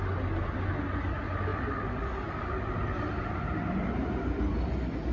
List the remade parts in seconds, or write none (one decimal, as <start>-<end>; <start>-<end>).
none